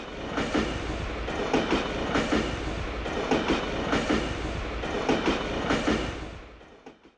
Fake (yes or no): no